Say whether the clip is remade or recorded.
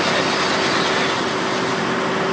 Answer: recorded